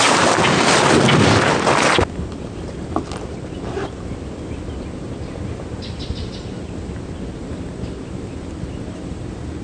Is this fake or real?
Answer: real